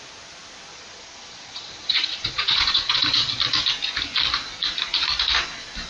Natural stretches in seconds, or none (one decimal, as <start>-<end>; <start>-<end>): 0.0-0.7; 3.3-5.9